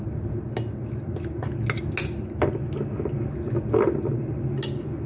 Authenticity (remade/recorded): recorded